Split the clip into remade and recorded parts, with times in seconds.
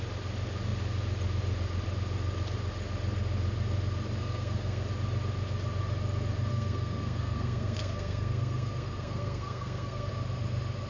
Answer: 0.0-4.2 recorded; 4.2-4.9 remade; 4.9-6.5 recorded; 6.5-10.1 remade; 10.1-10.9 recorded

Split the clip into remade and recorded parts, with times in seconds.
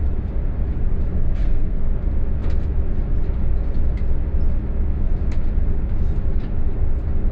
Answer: 0.0-1.1 recorded; 1.1-1.9 remade; 1.9-7.3 recorded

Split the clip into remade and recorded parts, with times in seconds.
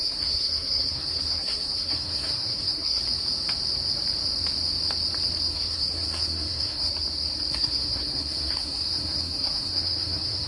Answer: 0.0-3.0 remade; 3.0-5.5 recorded; 5.5-6.9 remade; 6.9-7.5 recorded; 7.5-10.5 remade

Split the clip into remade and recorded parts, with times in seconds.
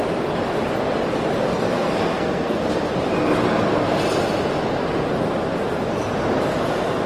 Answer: 0.0-1.7 recorded; 1.7-2.6 remade; 2.6-7.1 recorded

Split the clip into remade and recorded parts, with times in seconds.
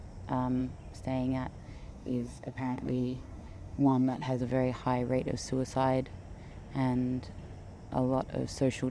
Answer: 0.0-1.6 recorded; 1.6-4.4 remade; 4.4-8.9 recorded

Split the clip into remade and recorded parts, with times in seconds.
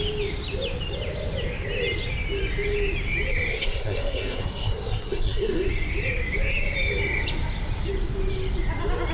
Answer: 0.0-3.5 recorded; 3.5-5.7 remade; 5.7-9.1 recorded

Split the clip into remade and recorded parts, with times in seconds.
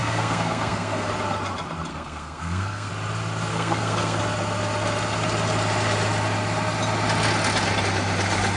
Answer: 0.0-1.1 remade; 1.1-1.9 recorded; 1.9-2.9 remade; 2.9-3.5 recorded; 3.5-4.2 remade; 4.2-8.6 recorded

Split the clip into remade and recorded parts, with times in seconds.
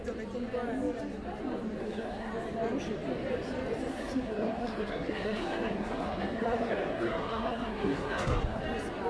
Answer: 0.0-1.8 recorded; 1.8-2.3 remade; 2.3-3.9 recorded; 3.9-8.6 remade; 8.6-9.1 recorded